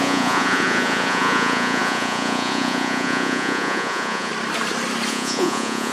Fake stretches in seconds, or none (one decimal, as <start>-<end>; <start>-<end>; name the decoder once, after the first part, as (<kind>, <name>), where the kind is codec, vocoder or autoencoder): 0.0-4.3 (vocoder, Vocos); 5.1-5.9